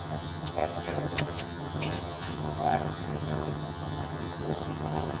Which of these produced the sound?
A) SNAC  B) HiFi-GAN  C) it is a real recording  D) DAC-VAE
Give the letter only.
B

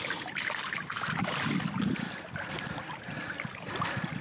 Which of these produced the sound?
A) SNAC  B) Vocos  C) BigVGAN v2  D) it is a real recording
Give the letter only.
D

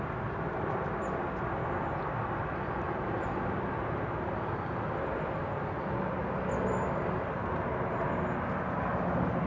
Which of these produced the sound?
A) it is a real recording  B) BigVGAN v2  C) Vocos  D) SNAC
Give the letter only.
A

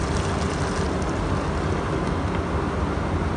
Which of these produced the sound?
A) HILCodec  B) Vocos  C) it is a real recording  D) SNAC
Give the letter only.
C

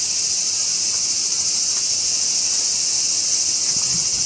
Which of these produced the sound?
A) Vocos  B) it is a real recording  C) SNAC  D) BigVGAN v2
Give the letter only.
B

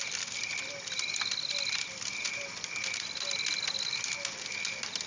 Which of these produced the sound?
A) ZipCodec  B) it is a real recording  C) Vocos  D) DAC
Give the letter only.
B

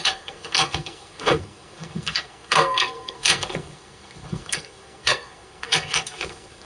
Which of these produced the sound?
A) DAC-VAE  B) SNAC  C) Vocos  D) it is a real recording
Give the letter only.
B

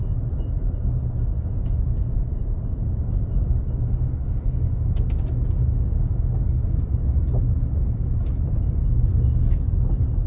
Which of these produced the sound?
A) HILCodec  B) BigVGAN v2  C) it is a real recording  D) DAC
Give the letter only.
C